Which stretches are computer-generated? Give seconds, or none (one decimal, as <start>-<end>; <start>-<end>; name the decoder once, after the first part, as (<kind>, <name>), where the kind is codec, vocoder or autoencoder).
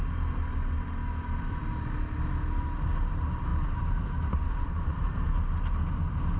3.5-5.5 (vocoder, BigVGAN v2)